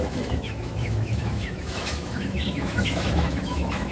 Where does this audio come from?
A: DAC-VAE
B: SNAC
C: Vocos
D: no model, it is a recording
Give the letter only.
A